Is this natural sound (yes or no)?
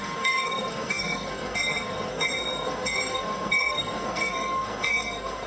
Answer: no